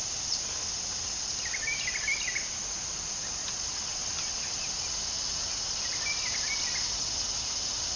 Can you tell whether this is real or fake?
real